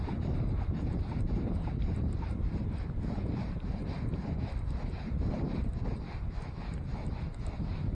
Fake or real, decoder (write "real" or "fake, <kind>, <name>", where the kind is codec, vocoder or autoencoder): real